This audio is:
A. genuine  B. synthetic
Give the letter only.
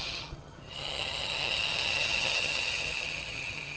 B